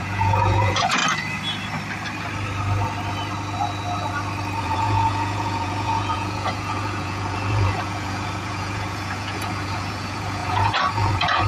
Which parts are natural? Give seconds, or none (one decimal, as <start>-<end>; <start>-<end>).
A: 1.0-4.6